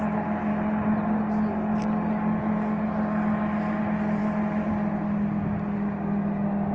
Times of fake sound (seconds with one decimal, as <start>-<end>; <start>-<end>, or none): none